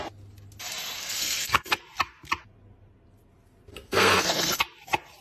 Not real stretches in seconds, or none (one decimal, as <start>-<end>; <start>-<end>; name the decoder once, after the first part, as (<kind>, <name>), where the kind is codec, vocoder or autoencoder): 1.0-1.8 (codec, SNAC); 3.7-4.6